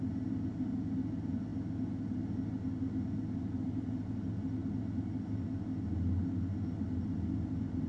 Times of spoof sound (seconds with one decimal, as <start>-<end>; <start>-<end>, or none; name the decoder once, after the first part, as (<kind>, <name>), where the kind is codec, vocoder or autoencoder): none